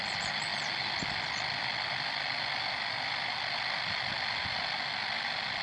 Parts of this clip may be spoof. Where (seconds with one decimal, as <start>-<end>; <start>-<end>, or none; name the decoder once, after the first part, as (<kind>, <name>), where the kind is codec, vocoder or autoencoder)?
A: none